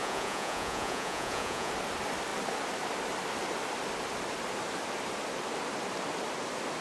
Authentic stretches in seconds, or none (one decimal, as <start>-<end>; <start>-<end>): 1.7-6.8